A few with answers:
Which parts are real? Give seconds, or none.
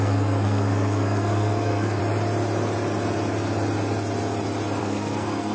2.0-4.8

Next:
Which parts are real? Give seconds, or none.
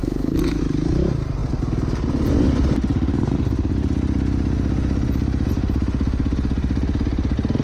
0.6-7.6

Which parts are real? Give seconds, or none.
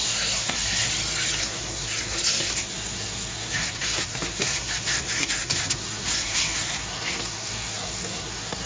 0.9-1.4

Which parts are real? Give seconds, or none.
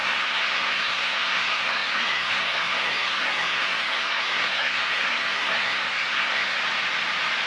6.6-7.5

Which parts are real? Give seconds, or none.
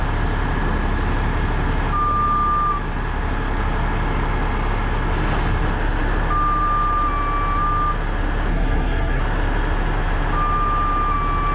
0.0-8.5; 9.2-11.5